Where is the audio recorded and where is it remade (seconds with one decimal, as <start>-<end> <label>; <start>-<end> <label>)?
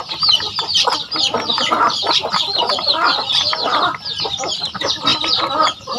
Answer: 0.0-6.0 remade